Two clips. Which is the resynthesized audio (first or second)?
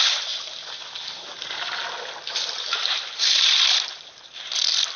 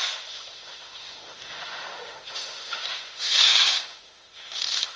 second